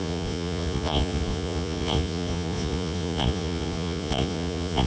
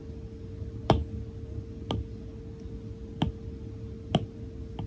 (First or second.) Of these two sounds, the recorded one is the second